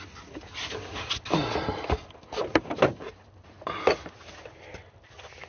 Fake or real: real